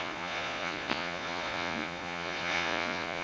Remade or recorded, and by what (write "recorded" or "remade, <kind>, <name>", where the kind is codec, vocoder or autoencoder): remade, vocoder, Vocos